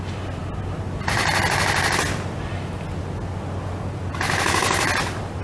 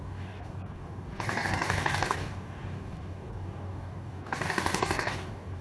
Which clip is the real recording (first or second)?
first